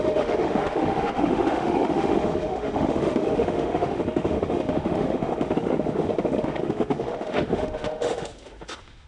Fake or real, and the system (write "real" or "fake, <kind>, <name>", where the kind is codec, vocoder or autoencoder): fake, autoencoder, DAC-VAE